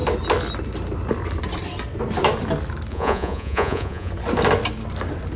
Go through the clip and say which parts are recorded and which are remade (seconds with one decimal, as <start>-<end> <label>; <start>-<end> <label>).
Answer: 0.0-2.9 recorded; 2.9-4.1 remade; 4.1-5.4 recorded